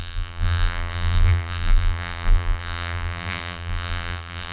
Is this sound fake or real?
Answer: fake